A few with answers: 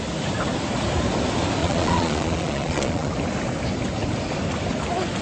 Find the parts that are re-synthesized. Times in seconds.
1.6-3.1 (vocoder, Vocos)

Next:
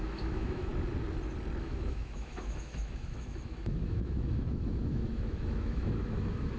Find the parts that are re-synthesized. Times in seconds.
0.0-0.7 (autoencoder, DAC-VAE); 1.6-6.6

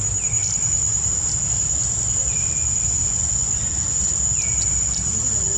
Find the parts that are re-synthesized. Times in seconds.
3.0-3.6 (vocoder, Vocos)

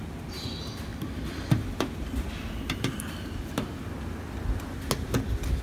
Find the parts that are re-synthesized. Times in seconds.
none

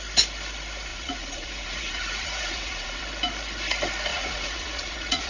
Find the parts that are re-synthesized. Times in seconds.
0.9-3.0 (vocoder, Vocos); 4.1-5.3